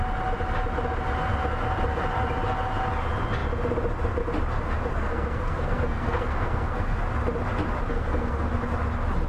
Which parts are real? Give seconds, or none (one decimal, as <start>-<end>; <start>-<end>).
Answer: 0.0-4.9; 7.0-7.9; 8.5-9.3

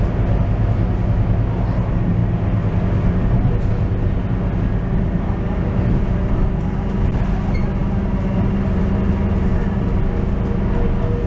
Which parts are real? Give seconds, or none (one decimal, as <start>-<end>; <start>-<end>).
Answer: 0.0-11.3

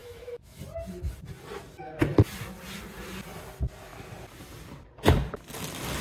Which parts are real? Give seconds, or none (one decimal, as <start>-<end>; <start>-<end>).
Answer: 0.6-6.0

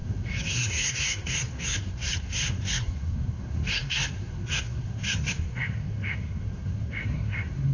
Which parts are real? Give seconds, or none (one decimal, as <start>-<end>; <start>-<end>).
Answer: none

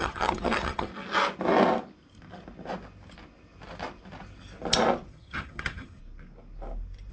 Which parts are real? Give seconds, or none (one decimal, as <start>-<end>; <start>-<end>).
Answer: 0.9-5.1; 6.0-7.1